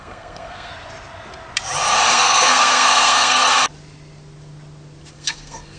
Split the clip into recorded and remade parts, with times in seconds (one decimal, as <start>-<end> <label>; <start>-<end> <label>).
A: 0.0-0.7 remade; 0.7-2.1 recorded; 2.1-3.6 remade; 3.6-5.1 recorded; 5.1-5.8 remade